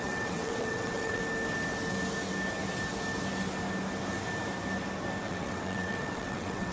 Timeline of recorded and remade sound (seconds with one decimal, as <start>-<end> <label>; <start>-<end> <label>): 0.0-1.2 remade; 1.2-5.2 recorded; 5.2-6.7 remade